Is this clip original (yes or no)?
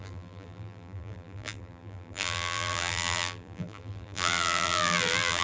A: no